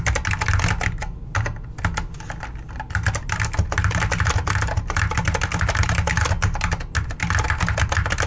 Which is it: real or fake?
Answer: real